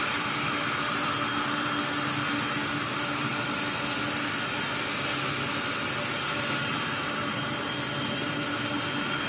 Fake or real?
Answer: real